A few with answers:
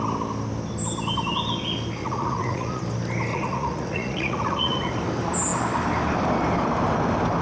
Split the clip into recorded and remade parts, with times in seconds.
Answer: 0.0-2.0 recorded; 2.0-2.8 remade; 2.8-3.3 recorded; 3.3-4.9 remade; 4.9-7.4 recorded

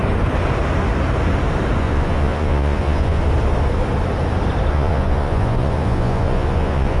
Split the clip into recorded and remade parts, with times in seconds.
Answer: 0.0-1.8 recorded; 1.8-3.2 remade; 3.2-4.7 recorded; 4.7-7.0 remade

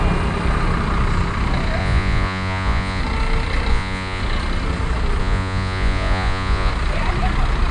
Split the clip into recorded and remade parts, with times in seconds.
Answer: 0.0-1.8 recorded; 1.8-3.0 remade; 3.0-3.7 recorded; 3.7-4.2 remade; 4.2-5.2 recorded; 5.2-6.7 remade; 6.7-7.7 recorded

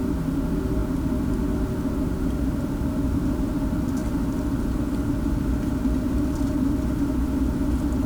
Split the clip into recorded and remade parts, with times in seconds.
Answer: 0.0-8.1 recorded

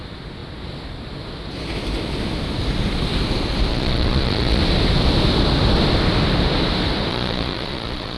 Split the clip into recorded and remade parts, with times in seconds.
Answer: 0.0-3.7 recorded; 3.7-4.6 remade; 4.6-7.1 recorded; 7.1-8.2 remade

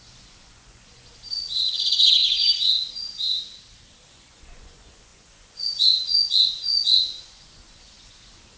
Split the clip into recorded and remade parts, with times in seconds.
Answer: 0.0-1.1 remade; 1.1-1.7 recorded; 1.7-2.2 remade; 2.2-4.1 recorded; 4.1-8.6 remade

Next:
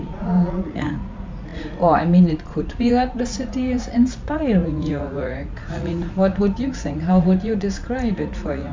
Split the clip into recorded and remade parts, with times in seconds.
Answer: 0.0-8.7 remade